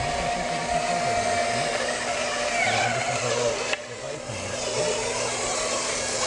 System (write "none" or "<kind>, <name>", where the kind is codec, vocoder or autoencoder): none